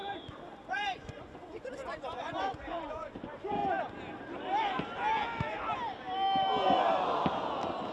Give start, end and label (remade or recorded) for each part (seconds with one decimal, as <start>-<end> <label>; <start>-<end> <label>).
0.0-0.7 recorded; 0.7-3.6 remade; 3.6-7.9 recorded